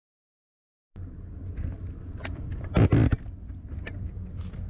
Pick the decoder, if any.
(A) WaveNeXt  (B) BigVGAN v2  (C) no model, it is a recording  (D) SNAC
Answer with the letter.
C